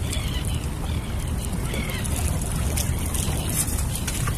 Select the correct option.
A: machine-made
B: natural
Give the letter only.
B